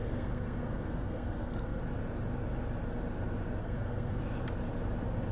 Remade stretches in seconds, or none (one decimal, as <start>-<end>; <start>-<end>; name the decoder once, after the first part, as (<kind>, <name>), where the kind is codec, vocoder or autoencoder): 0.0-1.8 (codec, SNAC); 3.6-4.2